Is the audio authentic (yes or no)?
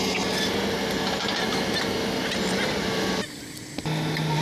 yes